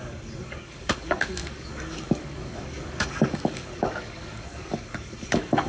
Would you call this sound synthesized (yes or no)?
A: yes